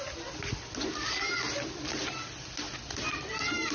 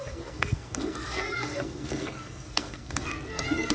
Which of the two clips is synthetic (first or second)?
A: second